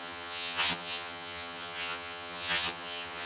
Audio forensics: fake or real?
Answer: fake